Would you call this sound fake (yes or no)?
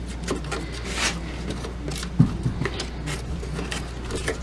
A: no